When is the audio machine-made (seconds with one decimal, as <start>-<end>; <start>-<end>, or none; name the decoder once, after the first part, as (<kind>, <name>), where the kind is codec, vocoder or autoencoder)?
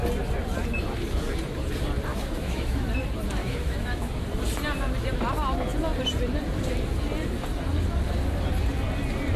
2.1-2.9 (autoencoder, DAC-VAE); 3.4-4.1